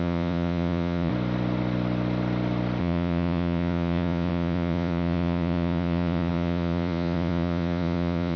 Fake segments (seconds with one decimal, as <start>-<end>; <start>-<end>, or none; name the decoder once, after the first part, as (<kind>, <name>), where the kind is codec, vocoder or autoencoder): 0.0-1.1 (vocoder, Vocos); 2.8-8.4